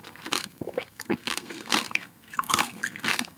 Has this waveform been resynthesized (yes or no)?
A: yes